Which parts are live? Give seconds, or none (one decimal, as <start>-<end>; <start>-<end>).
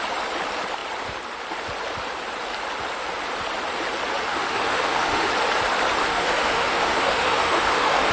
0.0-4.3; 5.3-6.0